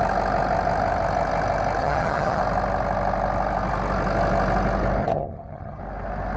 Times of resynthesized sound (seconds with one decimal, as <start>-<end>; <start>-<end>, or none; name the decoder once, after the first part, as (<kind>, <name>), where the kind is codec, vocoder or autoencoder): 1.8-2.4 (vocoder, HiFi-GAN); 5.0-5.8